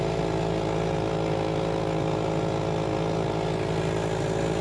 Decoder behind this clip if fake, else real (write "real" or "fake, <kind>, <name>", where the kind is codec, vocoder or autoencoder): real